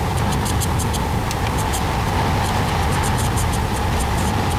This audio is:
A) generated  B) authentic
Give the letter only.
B